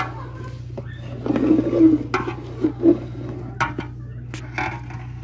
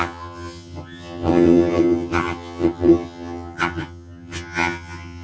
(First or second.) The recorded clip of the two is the first